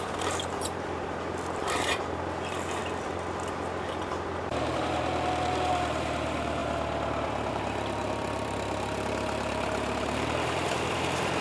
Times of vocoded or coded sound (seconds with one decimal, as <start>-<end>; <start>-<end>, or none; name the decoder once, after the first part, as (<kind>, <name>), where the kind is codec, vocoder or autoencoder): 0.0-2.8 (vocoder, BigVGAN v2); 4.4-6.6; 7.5-11.4